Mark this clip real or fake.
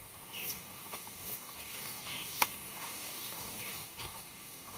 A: fake